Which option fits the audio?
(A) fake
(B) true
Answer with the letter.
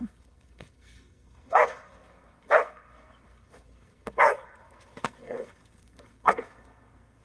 A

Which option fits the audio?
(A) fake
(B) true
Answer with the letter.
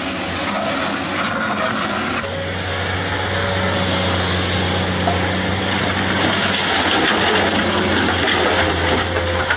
B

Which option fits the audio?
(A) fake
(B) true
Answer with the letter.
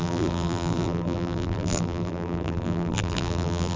A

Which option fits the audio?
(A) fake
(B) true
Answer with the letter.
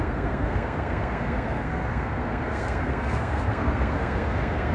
A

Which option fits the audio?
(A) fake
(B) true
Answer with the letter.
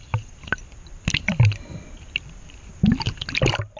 B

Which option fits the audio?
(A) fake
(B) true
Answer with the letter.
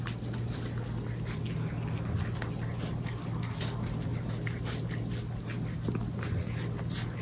B